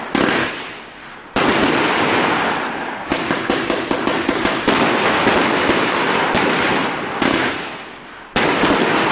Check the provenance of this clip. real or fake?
real